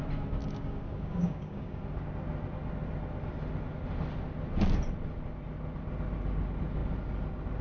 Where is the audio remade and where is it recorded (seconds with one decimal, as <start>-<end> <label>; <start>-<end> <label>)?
0.0-0.4 recorded; 0.4-1.8 remade; 1.8-7.6 recorded